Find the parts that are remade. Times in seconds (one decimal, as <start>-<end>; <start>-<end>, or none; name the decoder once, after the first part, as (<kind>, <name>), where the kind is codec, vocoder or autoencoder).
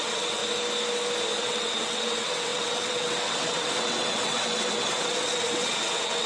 0.0-0.4 (vocoder, WaveNeXt); 1.4-6.3